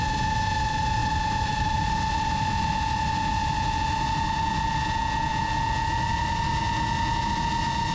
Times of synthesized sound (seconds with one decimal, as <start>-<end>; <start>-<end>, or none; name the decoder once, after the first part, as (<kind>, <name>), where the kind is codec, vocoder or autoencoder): 1.0-2.7 (vocoder, BigVGAN v2); 5.3-6.6